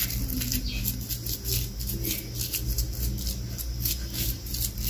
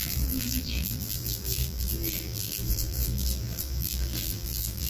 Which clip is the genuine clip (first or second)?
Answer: first